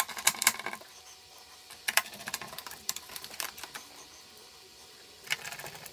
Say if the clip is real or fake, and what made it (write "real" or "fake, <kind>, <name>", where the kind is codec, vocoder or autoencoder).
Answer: fake, vocoder, BigVGAN v2